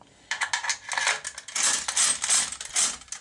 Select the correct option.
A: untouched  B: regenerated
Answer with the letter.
A